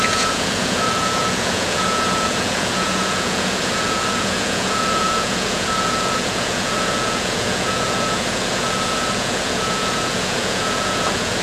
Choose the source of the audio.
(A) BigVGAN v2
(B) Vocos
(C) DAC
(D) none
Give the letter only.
B